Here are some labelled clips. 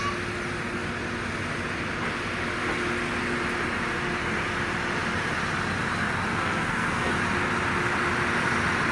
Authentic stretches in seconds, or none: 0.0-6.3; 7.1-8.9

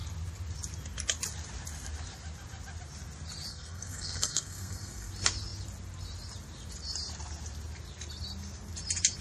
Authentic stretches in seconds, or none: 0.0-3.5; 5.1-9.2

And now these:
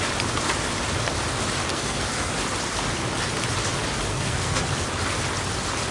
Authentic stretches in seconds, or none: 0.0-1.7; 2.3-4.1; 4.6-5.9